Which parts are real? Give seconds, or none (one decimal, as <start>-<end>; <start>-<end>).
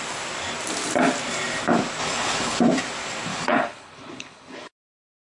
0.0-2.0; 2.6-3.3; 4.7-5.3